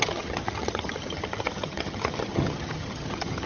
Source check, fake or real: fake